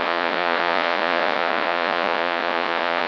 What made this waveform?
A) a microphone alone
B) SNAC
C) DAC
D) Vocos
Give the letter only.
D